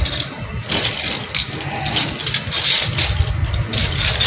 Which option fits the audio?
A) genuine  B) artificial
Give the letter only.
A